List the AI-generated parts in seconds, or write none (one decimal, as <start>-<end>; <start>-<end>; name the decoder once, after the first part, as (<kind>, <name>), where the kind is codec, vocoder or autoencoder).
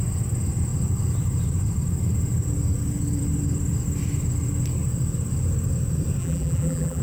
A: 6.2-7.0 (vocoder, BigVGAN v2)